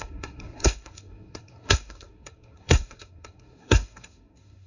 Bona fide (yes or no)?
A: no